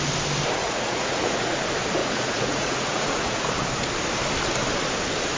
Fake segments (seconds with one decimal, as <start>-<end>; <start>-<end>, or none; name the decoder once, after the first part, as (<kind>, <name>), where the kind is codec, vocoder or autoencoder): 0.6-1.6 (vocoder, Vocos); 2.0-3.5